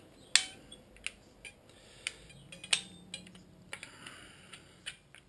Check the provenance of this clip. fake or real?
real